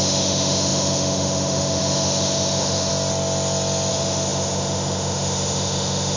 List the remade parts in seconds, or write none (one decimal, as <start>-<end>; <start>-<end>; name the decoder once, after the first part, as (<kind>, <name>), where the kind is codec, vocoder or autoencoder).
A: 0.0-2.9 (autoencoder, DAC-VAE); 3.9-6.2